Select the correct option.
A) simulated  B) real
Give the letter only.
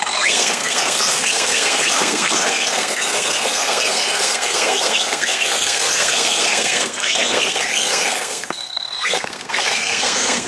A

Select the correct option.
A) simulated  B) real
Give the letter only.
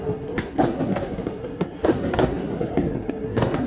A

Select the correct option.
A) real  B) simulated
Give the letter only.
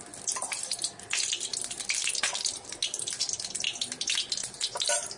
A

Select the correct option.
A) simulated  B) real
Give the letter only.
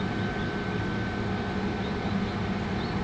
B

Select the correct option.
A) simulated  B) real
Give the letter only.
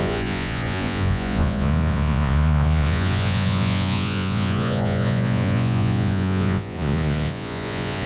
A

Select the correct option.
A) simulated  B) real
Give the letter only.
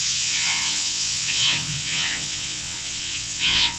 A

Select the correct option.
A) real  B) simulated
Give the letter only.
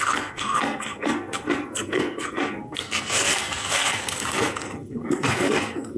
B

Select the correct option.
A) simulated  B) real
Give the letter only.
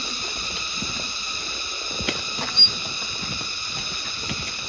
B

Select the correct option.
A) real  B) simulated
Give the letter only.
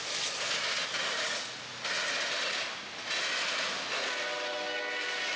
A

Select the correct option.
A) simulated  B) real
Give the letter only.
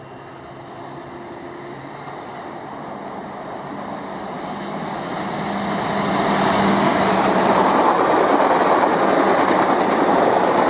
B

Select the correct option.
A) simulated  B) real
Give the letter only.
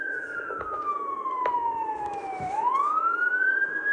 A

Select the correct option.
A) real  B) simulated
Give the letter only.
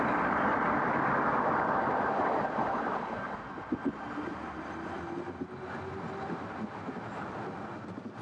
A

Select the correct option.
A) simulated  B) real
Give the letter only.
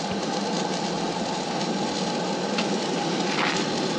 B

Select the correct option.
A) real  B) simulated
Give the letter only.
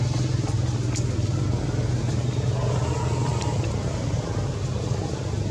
A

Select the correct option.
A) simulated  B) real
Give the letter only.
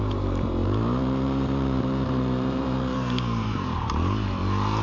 A